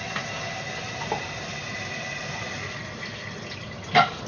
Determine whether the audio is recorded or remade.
recorded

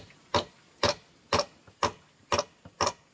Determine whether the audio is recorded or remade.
recorded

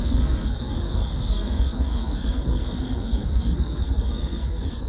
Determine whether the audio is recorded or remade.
remade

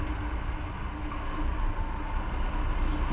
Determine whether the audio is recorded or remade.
recorded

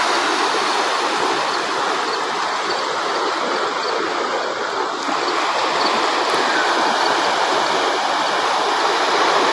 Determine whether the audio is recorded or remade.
recorded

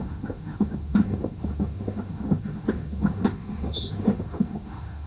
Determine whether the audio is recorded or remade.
remade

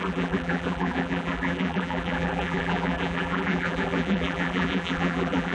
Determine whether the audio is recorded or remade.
remade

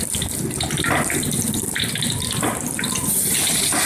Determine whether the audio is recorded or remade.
recorded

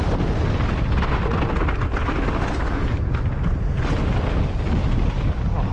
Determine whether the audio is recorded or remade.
recorded